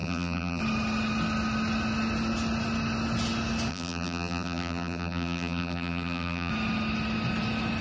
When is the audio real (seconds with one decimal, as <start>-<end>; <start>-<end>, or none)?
0.6-3.7; 6.5-7.8